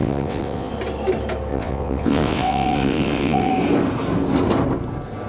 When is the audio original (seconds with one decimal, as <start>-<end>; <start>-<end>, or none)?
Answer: 0.7-1.5; 3.5-5.3